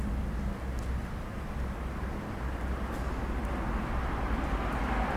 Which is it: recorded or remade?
recorded